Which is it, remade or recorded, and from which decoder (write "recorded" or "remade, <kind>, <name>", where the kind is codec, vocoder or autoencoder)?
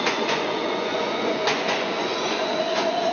remade, vocoder, Vocos